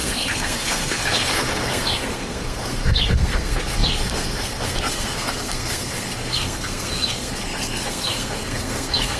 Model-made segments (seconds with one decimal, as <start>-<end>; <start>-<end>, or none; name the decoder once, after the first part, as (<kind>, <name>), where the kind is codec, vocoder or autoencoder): 0.0-9.2 (codec, SNAC)